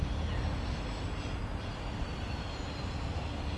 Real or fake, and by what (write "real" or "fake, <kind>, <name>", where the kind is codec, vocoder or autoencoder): real